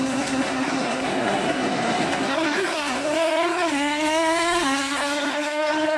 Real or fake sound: fake